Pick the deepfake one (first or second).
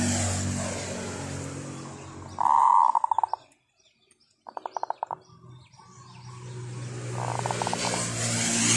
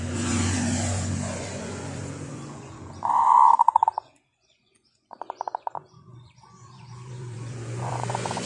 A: second